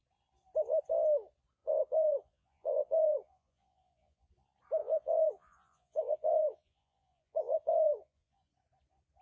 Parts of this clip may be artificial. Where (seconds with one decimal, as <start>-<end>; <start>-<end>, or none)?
1.6-4.3; 4.8-8.5